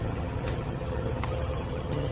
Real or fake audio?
fake